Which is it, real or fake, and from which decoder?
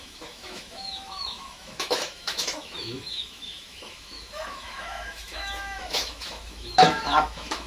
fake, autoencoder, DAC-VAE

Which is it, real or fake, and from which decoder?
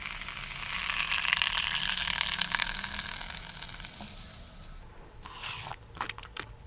real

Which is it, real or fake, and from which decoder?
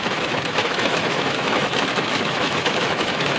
fake, autoencoder, DAC-VAE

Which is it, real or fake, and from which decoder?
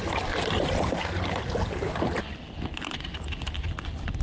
real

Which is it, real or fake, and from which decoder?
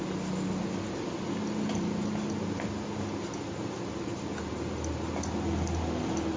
real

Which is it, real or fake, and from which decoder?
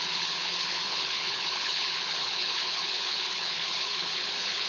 fake, codec, HILCodec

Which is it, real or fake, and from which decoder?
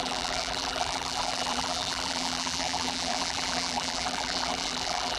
fake, vocoder, BigVGAN v2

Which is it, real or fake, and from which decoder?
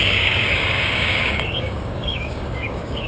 fake, codec, DAC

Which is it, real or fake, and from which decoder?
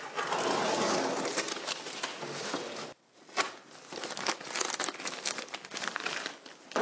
real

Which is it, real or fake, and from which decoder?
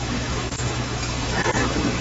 fake, autoencoder, DAC-VAE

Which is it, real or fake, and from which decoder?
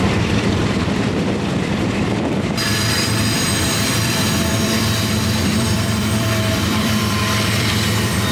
fake, vocoder, BigVGAN v2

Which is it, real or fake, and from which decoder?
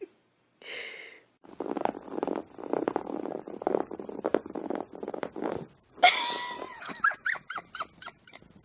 real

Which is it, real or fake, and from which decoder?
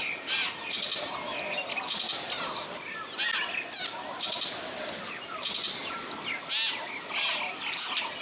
real